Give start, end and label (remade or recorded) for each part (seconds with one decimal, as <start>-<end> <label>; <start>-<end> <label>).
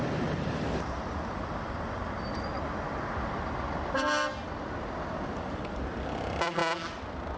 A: 0.0-2.0 remade; 2.0-4.8 recorded; 4.8-6.6 remade; 6.6-7.4 recorded